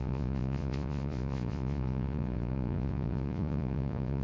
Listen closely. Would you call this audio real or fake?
fake